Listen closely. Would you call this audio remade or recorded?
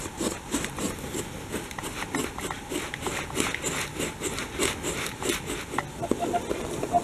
recorded